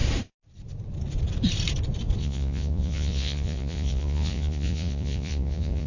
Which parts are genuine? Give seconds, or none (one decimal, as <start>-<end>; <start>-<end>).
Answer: 0.0-2.2